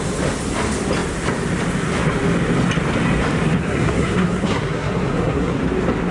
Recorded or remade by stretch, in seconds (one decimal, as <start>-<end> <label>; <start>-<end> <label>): 0.0-3.6 recorded; 3.6-5.5 remade; 5.5-6.1 recorded